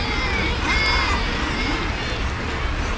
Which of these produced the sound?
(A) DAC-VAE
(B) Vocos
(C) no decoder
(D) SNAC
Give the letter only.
C